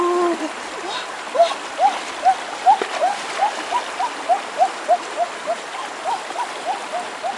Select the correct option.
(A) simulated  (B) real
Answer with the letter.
B